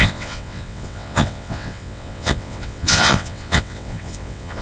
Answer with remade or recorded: remade